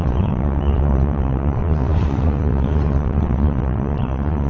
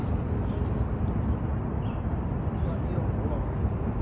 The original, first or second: second